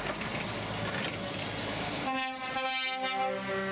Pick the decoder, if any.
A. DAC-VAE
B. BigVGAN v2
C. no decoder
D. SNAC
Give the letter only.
C